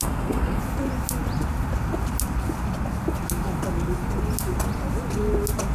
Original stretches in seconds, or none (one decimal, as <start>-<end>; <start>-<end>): 0.6-5.7